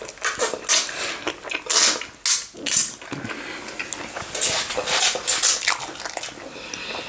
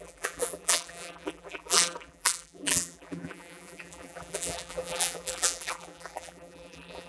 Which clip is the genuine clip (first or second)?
first